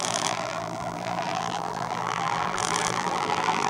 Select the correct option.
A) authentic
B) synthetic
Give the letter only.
B